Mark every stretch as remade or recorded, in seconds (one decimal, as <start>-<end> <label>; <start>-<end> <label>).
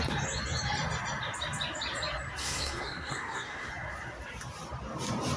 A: 0.0-2.4 recorded; 2.4-3.7 remade; 3.7-5.4 recorded